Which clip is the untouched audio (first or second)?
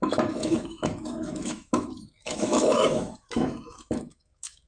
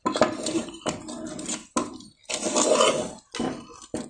second